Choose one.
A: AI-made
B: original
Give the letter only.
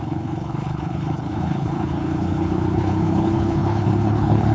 A